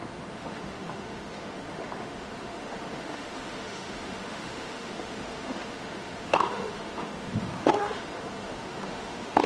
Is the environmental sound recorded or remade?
remade